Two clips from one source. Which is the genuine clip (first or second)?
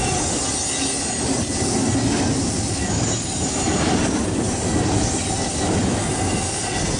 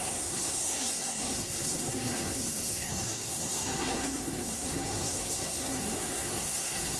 first